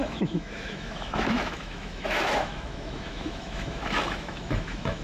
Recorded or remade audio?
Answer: remade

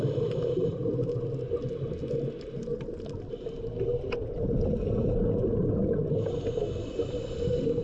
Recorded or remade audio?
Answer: recorded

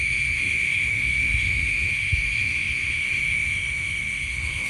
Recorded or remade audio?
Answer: remade